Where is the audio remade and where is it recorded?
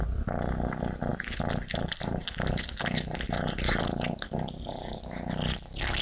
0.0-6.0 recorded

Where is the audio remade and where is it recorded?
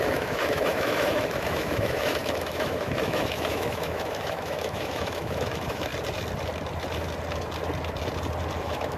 0.0-5.9 remade; 5.9-8.6 recorded; 8.6-9.0 remade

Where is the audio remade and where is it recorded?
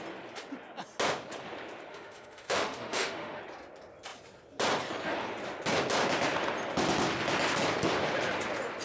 0.0-1.9 recorded; 1.9-3.4 remade; 3.4-8.8 recorded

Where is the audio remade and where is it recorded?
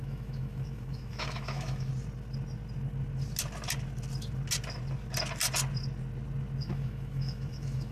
0.0-1.9 remade; 1.9-6.6 recorded; 6.6-7.9 remade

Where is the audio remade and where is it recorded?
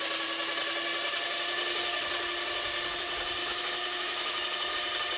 0.0-3.4 recorded; 3.4-4.7 remade; 4.7-5.2 recorded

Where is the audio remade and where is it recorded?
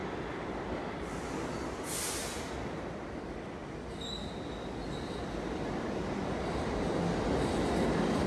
0.0-8.3 recorded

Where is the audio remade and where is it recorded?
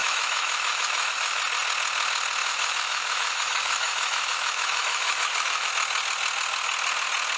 0.0-1.4 remade; 1.4-2.4 recorded; 2.4-5.7 remade; 5.7-7.4 recorded